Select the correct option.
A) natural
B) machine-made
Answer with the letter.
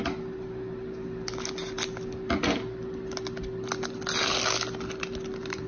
A